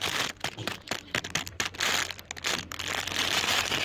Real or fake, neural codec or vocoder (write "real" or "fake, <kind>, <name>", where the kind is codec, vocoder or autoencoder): fake, vocoder, BigVGAN v2